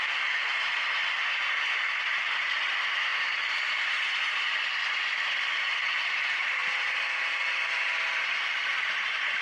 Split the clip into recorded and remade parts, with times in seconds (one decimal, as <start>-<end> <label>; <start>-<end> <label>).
0.0-9.4 remade